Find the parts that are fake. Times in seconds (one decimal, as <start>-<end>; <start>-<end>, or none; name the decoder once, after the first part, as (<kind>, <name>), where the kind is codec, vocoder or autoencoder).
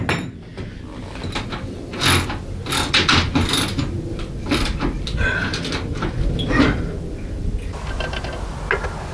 none